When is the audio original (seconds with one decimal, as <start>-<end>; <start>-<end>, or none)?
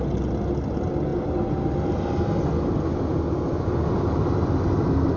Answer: 0.0-5.2